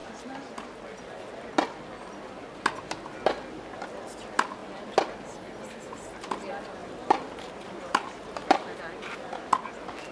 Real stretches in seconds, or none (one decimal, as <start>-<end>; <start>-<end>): 0.0-6.8; 8.8-10.1